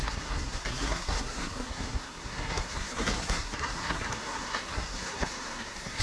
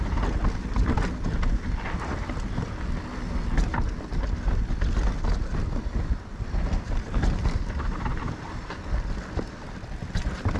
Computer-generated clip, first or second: first